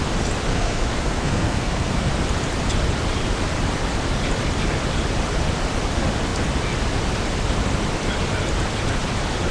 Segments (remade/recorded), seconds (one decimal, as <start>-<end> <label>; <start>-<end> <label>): 0.0-0.5 recorded; 0.5-2.1 remade; 2.1-9.5 recorded